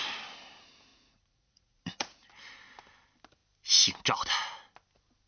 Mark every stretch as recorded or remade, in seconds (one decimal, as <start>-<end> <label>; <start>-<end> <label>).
0.0-0.9 recorded; 0.9-2.3 remade; 2.3-5.3 recorded